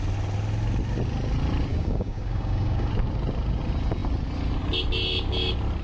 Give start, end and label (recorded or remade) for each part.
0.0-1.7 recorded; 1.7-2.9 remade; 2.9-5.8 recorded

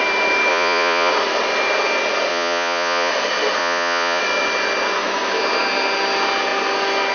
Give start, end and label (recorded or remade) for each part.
0.0-0.5 recorded; 0.5-1.1 remade; 1.1-2.3 recorded; 2.3-3.1 remade; 3.1-3.6 recorded; 3.6-4.2 remade; 4.2-7.1 recorded

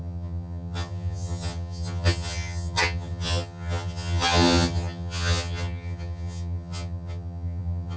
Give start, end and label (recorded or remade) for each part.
0.0-8.0 remade

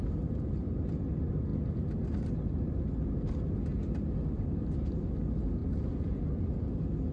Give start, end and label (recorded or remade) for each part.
0.0-5.6 recorded; 5.6-6.2 remade; 6.2-7.1 recorded

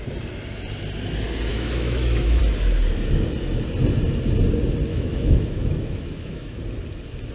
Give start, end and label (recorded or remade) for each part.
0.0-1.5 recorded; 1.5-2.4 remade; 2.4-4.9 recorded; 4.9-6.6 remade; 6.6-7.3 recorded

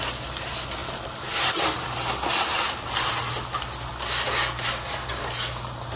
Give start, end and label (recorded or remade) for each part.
0.0-6.0 recorded

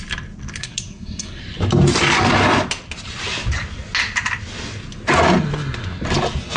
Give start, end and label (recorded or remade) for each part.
0.0-0.6 recorded; 0.6-1.4 remade; 1.4-6.6 recorded

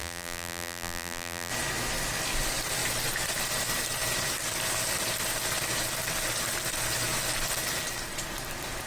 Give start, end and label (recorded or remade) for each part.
0.0-1.5 remade; 1.5-8.9 recorded